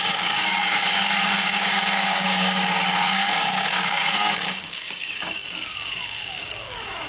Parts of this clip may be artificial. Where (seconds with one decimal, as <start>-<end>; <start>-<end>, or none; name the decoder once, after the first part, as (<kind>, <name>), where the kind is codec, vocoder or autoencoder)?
0.0-7.1 (codec, DAC)